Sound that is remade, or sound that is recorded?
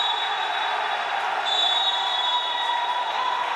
recorded